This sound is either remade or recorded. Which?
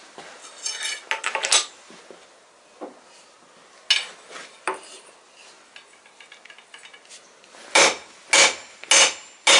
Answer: recorded